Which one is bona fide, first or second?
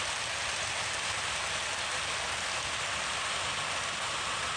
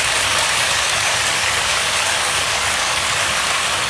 first